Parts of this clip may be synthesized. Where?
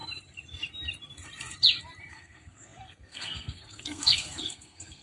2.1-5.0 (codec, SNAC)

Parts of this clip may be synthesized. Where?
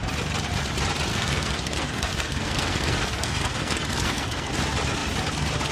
1.1-4.5 (codec, SNAC)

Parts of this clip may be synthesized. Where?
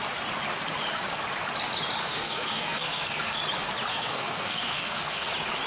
2.0-3.4 (codec, SNAC); 3.9-5.3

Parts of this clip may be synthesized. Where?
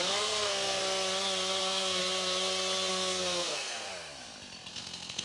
0.0-0.8 (codec, SNAC); 1.6-2.0; 2.9-3.9; 4.7-5.2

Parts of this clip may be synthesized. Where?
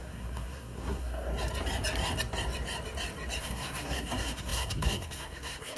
0.0-1.3 (codec, SNAC); 3.4-5.8